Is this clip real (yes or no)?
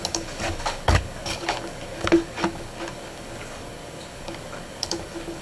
no